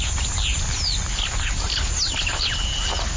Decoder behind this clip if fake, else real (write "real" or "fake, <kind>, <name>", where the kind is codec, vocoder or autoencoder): real